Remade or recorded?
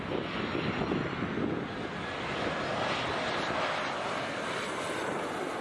recorded